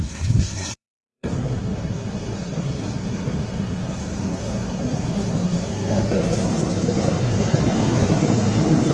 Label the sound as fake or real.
fake